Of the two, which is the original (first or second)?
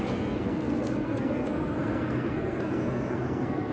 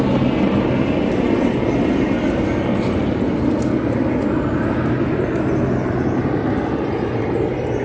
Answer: second